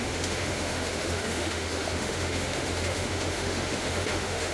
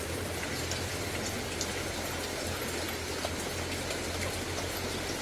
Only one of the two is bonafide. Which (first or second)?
second